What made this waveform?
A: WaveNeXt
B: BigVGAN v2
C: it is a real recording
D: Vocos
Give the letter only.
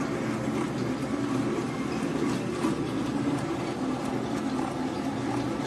C